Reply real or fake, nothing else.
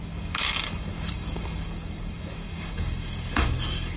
fake